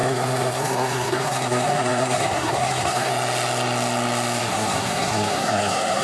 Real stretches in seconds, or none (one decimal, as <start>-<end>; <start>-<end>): 3.1-4.4